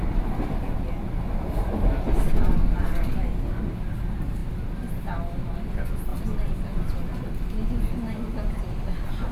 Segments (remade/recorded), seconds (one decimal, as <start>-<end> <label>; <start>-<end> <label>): 0.0-6.1 recorded; 6.1-7.3 remade; 7.3-9.3 recorded